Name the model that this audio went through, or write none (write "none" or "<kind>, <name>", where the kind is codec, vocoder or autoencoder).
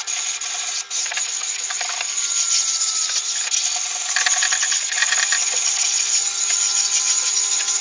none